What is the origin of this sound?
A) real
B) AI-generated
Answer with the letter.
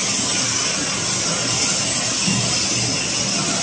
A